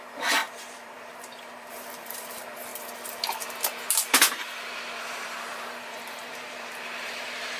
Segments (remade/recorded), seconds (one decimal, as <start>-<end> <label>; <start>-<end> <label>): 0.0-2.7 remade; 2.7-5.0 recorded; 5.0-7.6 remade